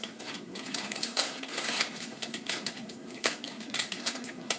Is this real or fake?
fake